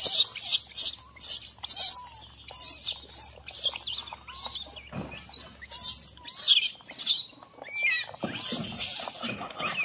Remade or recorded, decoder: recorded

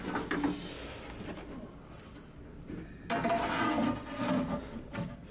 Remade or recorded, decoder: recorded